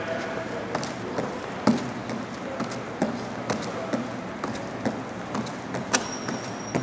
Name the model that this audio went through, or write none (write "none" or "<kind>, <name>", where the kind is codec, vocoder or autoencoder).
none